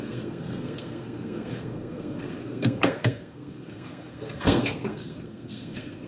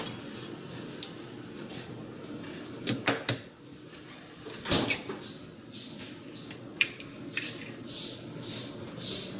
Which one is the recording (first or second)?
second